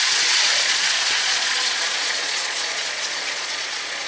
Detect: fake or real fake